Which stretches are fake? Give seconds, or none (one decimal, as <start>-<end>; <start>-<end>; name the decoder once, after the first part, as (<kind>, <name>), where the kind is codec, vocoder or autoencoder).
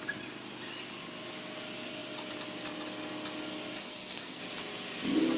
3.8-4.4 (codec, SNAC)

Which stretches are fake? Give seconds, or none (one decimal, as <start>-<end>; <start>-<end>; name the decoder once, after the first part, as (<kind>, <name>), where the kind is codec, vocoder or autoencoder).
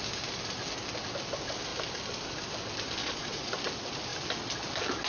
3.0-3.6 (vocoder, Vocos)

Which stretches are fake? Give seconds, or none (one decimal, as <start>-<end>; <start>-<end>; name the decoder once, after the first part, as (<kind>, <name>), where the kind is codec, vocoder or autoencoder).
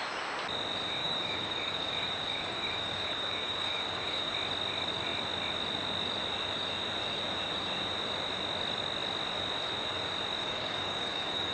1.0-4.3 (codec, DAC); 10.4-11.5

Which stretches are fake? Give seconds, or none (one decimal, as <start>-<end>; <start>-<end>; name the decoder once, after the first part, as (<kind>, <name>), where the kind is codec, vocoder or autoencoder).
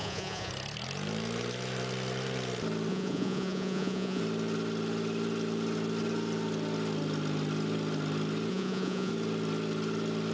0.0-0.5 (vocoder, Vocos); 2.9-4.2; 8.5-9.1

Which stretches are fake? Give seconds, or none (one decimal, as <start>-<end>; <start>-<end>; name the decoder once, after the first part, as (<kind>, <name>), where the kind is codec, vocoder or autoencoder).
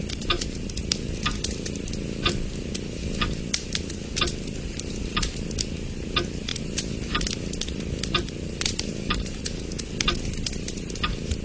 none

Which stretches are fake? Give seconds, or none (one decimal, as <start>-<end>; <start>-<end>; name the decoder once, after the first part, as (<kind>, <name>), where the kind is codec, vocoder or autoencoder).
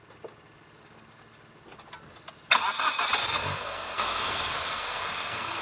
3.2-5.6 (codec, SNAC)